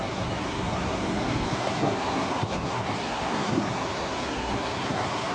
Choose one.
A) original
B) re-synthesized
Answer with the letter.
B